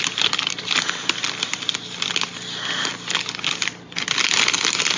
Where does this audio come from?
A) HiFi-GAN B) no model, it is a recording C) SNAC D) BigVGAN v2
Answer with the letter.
B